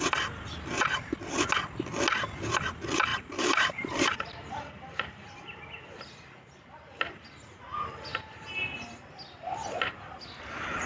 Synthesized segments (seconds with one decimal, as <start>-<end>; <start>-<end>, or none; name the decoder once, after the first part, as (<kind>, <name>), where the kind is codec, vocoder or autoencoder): 3.1-5.6 (vocoder, BigVGAN v2)